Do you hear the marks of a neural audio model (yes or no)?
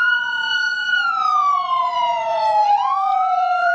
yes